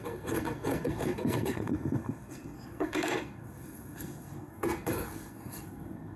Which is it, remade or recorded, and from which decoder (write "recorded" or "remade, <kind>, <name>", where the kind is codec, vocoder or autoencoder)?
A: remade, codec, SNAC